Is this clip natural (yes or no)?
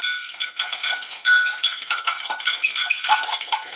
no